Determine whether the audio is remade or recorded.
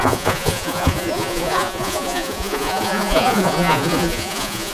remade